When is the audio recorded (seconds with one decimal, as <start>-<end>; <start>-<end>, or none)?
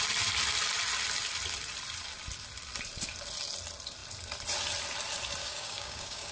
0.0-5.4